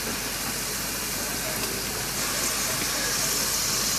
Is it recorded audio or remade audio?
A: recorded